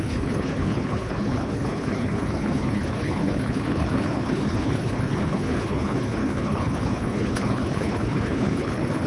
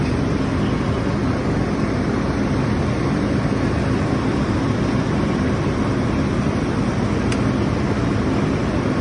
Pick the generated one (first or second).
first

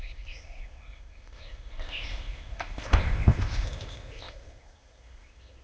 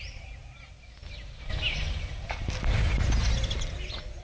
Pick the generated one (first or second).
first